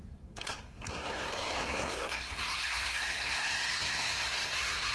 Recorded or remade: remade